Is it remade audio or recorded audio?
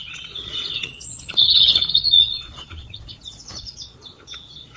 remade